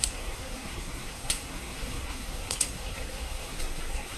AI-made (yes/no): yes